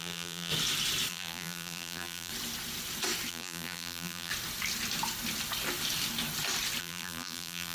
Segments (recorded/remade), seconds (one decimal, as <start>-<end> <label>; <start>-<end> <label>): 0.0-0.5 remade; 0.5-1.1 recorded; 1.1-2.3 remade; 2.3-3.3 recorded; 3.3-4.3 remade; 4.3-6.8 recorded; 6.8-7.7 remade